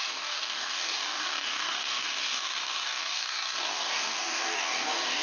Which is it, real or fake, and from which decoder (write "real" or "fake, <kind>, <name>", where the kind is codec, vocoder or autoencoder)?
fake, codec, DAC